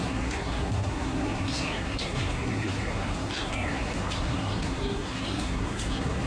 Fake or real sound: fake